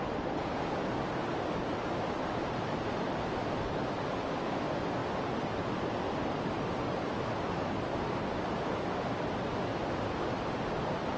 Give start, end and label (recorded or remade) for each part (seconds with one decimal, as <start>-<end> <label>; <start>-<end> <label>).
0.0-11.2 recorded